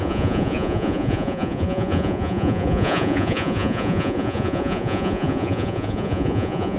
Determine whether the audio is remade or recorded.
remade